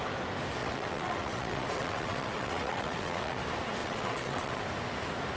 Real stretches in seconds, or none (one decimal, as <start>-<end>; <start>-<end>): 0.0-0.6; 3.4-3.8; 4.6-5.4